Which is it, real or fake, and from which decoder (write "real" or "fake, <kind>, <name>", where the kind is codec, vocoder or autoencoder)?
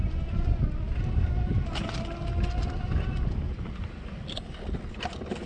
real